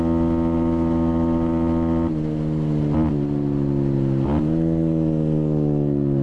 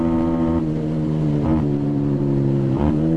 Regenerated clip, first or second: second